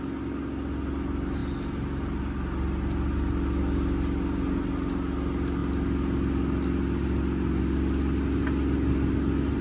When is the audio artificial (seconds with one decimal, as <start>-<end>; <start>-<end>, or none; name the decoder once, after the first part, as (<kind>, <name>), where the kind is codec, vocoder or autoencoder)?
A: none